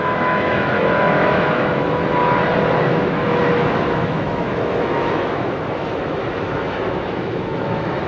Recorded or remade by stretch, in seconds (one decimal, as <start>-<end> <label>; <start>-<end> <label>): 0.0-2.2 remade; 2.2-2.8 recorded; 2.8-8.1 remade